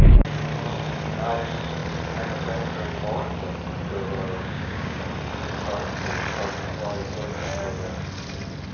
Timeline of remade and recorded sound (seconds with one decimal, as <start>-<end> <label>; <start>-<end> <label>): 0.0-4.2 recorded; 4.2-5.0 remade; 5.0-8.7 recorded